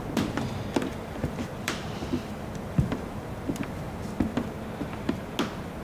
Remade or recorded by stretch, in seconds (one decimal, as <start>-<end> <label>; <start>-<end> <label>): 0.0-0.9 recorded; 0.9-4.0 remade; 4.0-5.8 recorded